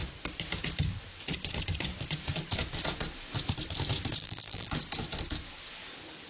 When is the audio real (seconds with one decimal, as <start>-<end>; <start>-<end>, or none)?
0.0-4.2; 4.7-6.3